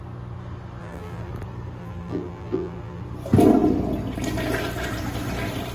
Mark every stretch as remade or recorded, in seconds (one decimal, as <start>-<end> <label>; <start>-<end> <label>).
0.0-0.8 recorded; 0.8-1.3 remade; 1.3-1.8 recorded; 1.8-3.0 remade; 3.0-5.7 recorded